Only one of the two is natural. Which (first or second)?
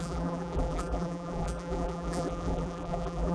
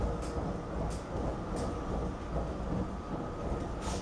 second